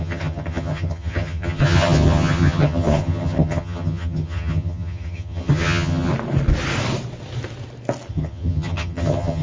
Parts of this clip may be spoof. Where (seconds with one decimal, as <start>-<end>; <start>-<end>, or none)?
0.0-6.1; 8.1-9.4